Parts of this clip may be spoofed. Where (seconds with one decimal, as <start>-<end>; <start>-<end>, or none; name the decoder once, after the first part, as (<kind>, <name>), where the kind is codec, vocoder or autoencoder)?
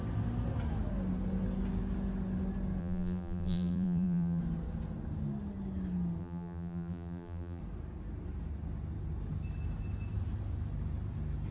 2.8-4.4 (vocoder, BigVGAN v2); 6.2-7.6